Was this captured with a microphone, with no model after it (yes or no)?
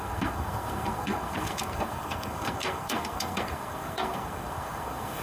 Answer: no